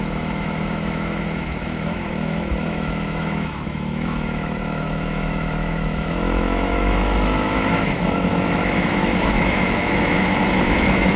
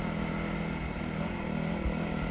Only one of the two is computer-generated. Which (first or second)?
first